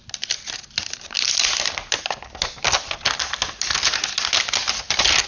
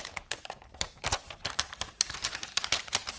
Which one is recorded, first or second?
first